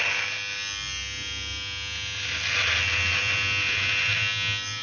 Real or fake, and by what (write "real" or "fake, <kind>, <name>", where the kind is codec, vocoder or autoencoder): real